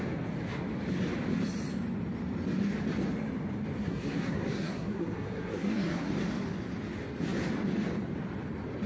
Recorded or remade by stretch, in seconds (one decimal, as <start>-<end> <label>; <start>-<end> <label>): 0.0-3.8 recorded; 3.8-6.1 remade; 6.1-8.9 recorded